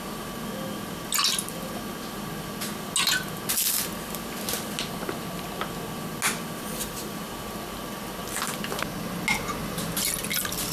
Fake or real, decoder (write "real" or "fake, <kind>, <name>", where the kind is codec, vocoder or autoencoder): real